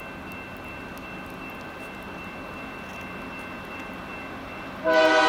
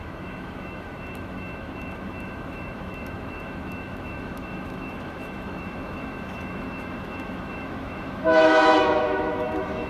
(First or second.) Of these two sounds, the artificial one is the second